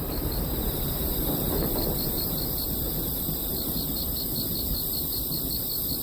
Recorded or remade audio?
recorded